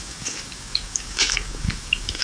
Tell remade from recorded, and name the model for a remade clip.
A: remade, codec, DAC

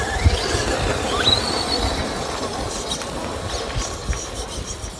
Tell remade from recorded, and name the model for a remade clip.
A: recorded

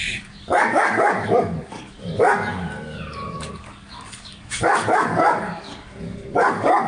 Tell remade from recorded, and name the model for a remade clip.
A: remade, codec, DAC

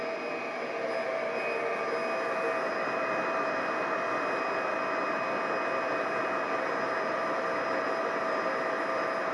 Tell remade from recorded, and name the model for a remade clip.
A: recorded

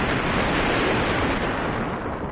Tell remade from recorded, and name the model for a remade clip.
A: recorded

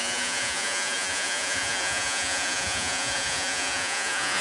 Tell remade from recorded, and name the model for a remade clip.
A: remade, vocoder, Vocos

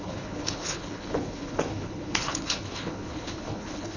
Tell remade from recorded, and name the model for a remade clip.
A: remade, codec, HILCodec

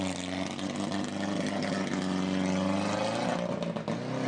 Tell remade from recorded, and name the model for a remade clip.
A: recorded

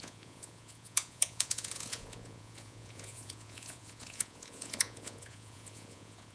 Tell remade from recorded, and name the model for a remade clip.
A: remade, vocoder, Vocos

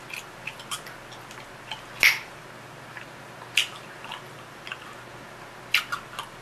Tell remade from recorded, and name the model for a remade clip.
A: recorded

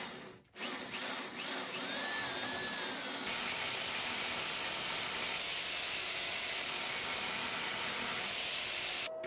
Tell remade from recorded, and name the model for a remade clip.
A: recorded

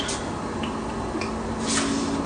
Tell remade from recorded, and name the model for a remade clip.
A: recorded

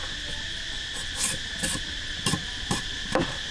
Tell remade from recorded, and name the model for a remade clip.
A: recorded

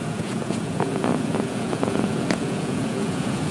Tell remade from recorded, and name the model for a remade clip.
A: remade, vocoder, Vocos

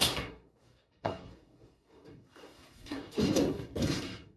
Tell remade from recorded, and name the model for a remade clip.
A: remade, codec, SNAC